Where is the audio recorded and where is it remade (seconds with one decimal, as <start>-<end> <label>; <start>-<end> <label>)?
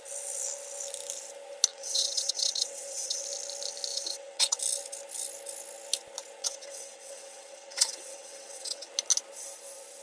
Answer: 0.0-1.7 recorded; 1.7-3.2 remade; 3.2-3.9 recorded; 3.9-4.6 remade; 4.6-6.4 recorded; 6.4-8.9 remade; 8.9-10.0 recorded